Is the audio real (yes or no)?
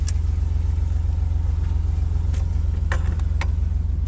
yes